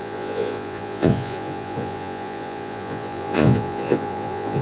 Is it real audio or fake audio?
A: fake